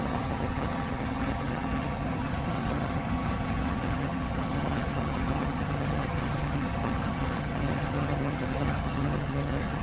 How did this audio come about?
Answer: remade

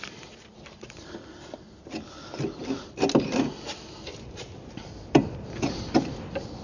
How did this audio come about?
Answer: recorded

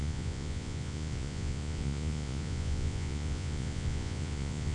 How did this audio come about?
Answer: remade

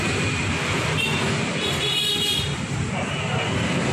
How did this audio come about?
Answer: recorded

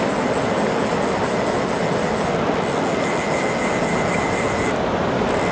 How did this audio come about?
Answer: recorded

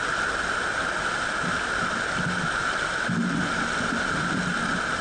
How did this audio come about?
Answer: recorded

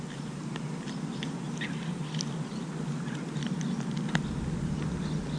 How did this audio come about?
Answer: recorded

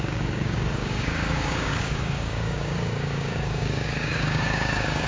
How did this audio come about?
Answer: remade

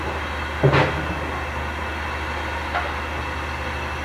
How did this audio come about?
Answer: recorded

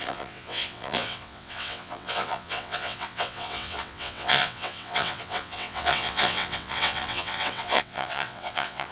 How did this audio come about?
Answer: remade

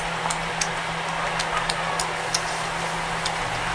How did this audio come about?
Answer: recorded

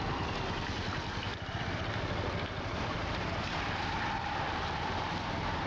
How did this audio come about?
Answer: remade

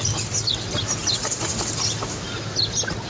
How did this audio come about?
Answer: recorded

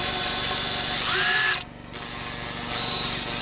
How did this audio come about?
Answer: recorded